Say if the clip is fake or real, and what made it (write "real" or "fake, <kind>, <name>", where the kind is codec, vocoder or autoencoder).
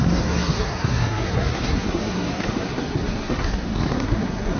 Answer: fake, codec, SNAC